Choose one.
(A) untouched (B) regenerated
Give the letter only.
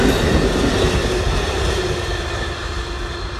A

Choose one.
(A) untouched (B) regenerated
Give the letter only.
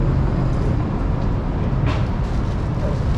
A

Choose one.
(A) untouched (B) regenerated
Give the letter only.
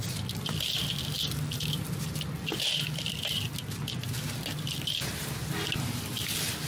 A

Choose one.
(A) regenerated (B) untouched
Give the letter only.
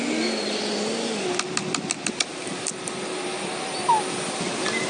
B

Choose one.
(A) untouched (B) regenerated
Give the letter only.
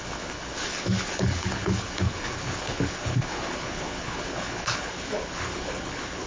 B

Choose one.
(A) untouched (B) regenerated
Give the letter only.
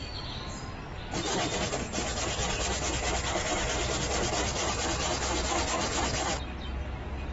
A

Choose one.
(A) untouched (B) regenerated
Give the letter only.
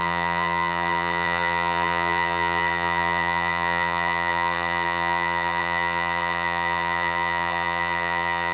B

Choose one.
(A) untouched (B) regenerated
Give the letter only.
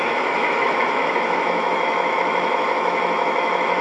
B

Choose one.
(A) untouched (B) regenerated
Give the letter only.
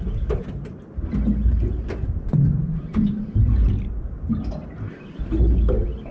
A